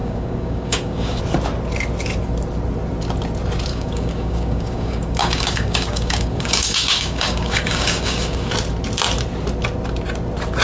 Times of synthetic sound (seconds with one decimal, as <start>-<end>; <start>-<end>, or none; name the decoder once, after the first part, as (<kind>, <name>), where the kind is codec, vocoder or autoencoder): 0.0-1.2 (codec, DAC); 3.7-8.5